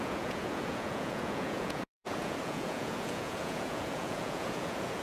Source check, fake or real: fake